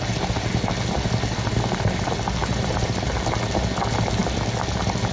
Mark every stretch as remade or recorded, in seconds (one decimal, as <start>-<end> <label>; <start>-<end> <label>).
0.0-2.4 recorded; 2.4-3.1 remade; 3.1-5.1 recorded